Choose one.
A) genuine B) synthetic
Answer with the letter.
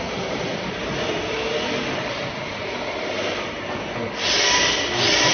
A